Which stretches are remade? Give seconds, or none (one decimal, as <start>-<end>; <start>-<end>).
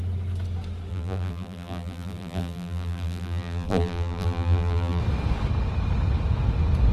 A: 0.9-5.0